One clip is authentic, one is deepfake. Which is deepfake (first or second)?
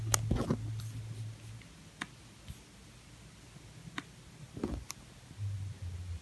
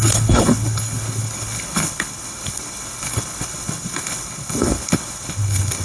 second